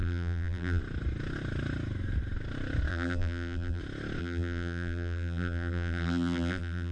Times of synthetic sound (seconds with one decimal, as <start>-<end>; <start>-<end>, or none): 0.0-0.8; 2.9-3.8; 4.2-6.9